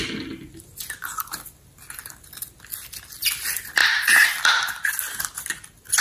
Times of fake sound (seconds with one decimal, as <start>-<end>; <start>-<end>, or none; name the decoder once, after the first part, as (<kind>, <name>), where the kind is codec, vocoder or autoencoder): none